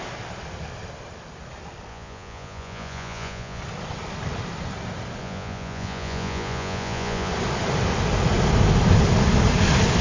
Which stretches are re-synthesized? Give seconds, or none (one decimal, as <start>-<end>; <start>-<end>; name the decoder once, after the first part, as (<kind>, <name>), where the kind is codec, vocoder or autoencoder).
1.9-3.6 (vocoder, Vocos); 5.2-7.3